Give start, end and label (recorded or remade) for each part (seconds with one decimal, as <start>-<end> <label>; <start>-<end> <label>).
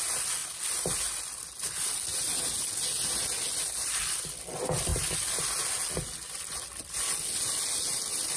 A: 0.0-8.4 recorded